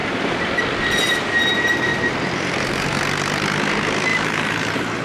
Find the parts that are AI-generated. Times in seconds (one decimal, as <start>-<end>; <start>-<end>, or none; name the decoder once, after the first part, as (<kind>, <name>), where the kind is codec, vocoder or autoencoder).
0.0-0.6 (vocoder, BigVGAN v2); 1.9-3.0; 4.1-5.0

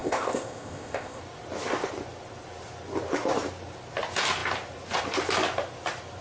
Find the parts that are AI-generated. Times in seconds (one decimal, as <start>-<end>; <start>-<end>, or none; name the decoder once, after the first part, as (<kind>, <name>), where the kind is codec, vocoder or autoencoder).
0.0-1.2 (codec, ZipCodec)

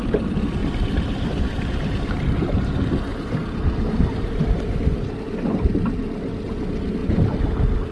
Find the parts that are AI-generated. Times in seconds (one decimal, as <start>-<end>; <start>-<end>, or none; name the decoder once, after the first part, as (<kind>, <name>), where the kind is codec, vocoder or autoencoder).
0.6-2.7 (vocoder, BigVGAN v2); 3.1-6.3

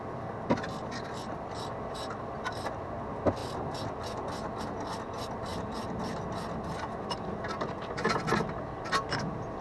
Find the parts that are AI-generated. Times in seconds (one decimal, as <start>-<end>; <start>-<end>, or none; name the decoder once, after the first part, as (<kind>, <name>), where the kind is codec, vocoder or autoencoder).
none

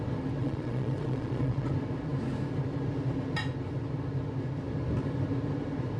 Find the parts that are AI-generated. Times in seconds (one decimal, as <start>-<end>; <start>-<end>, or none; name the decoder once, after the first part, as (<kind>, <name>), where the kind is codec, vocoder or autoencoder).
0.4-1.7 (vocoder, Vocos)

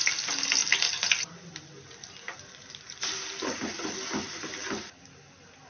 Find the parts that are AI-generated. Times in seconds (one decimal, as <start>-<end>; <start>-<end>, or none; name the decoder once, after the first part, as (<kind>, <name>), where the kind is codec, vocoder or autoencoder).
0.0-5.7 (vocoder, BigVGAN v2)

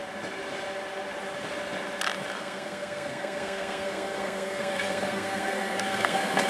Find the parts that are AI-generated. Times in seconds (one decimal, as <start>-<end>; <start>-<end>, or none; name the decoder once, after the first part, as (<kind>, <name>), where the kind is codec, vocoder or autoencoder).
2.4-6.5 (codec, SNAC)

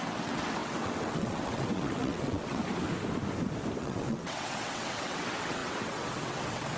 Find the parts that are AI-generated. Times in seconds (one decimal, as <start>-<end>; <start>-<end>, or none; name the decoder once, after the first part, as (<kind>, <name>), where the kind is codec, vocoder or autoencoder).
0.0-2.6 (vocoder, WaveNeXt); 3.8-6.8